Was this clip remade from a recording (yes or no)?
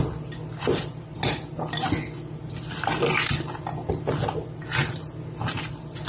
no